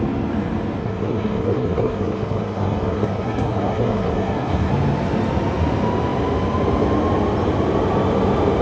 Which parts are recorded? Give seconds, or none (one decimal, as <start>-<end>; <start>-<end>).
0.0-0.8; 4.7-8.6